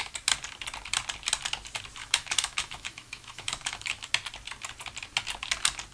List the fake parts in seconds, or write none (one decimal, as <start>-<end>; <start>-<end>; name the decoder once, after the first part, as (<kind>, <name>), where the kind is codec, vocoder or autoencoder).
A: 2.0-4.1 (autoencoder, DAC-VAE)